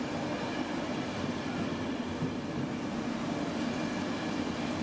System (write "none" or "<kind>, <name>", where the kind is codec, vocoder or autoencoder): none